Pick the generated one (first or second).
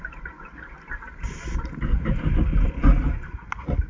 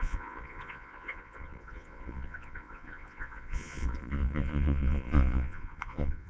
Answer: second